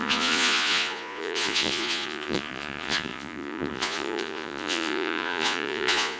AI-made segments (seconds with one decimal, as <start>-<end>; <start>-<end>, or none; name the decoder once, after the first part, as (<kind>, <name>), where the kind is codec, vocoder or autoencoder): 0.0-6.2 (vocoder, Vocos)